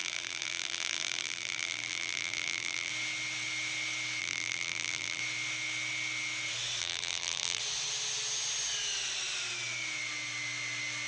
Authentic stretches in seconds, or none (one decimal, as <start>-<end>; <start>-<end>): 2.9-4.2; 5.2-6.8; 7.6-11.1